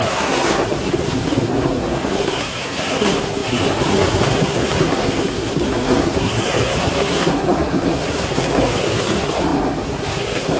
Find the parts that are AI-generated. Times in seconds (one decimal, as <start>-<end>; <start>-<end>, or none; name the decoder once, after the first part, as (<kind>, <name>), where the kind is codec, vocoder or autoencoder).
0.0-10.6 (codec, SNAC)

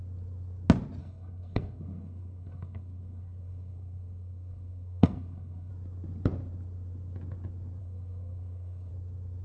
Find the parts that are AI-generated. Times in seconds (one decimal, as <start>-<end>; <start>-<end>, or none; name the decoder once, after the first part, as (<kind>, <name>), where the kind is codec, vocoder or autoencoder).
1.0-5.7 (codec, SNAC); 7.8-8.9

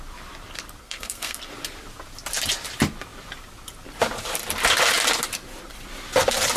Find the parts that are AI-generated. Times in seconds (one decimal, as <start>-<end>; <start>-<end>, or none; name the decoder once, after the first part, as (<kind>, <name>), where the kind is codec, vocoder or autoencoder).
0.8-1.5 (codec, SNAC)

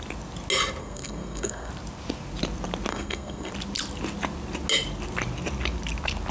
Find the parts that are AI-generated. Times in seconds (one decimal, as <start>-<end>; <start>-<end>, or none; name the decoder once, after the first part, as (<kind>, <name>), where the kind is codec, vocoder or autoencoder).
0.8-1.7 (codec, SNAC); 2.9-3.5

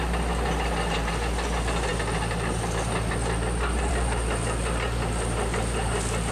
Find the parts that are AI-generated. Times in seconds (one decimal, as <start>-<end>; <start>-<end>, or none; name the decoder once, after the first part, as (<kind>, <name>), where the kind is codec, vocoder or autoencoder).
none

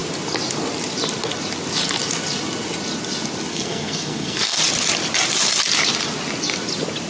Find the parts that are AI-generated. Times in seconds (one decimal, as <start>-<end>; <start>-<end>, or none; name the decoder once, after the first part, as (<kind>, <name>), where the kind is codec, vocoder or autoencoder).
3.5-4.6 (codec, SNAC)

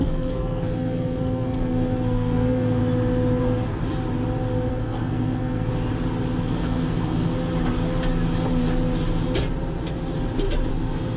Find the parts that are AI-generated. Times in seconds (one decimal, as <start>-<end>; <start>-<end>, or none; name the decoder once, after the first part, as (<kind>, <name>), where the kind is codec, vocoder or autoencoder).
0.0-2.8 (codec, SNAC); 3.4-3.8; 4.7-5.7; 6.4-7.3; 10.7-11.2